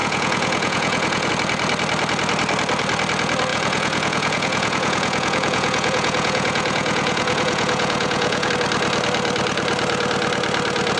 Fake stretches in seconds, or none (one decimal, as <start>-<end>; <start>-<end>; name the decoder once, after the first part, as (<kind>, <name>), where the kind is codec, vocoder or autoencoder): 0.0-1.3 (vocoder, Vocos); 3.5-8.5